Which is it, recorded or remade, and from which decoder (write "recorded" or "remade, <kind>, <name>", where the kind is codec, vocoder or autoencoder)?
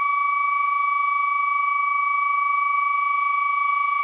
recorded